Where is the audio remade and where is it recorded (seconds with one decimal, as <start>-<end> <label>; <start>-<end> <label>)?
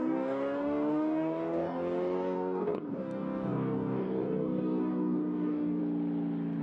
0.0-5.8 remade; 5.8-6.6 recorded